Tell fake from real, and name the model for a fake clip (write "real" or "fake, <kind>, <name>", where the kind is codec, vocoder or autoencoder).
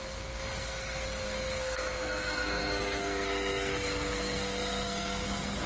fake, codec, SNAC